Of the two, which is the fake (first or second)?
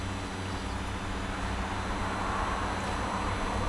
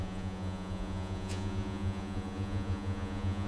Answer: second